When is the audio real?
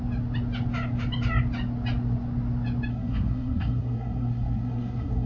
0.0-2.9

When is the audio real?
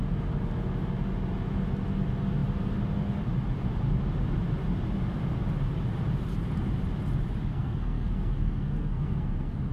0.0-7.5